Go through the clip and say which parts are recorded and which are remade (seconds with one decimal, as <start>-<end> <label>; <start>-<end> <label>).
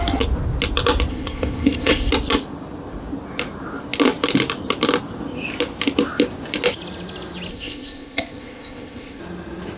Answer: 0.0-1.1 recorded; 1.1-2.1 remade; 2.1-7.5 recorded; 7.5-9.2 remade; 9.2-9.8 recorded